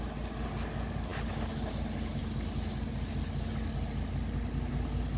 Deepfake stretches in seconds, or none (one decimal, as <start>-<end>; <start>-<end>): none